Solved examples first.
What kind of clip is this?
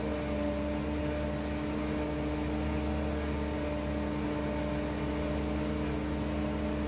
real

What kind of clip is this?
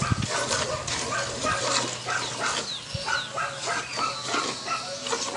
real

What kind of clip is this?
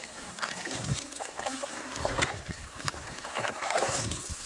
fake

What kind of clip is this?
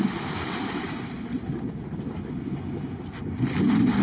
real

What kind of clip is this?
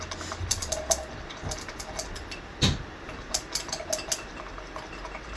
real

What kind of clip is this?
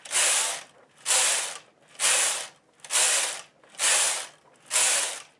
real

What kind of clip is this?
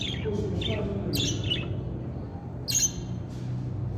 real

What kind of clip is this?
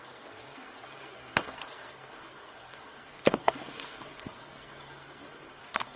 fake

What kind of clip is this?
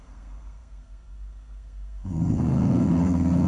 fake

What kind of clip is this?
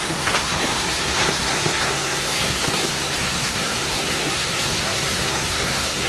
fake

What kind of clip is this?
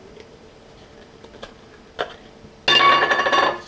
real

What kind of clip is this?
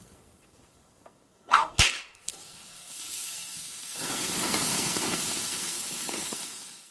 fake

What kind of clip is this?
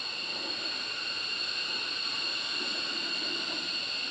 real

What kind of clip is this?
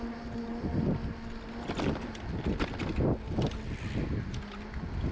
real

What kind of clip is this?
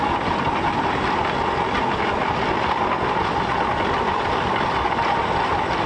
real